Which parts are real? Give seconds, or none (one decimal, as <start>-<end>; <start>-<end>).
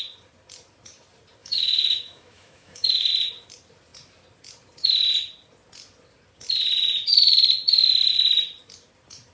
0.0-1.4; 3.1-9.3